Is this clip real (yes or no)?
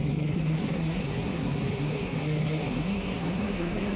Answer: no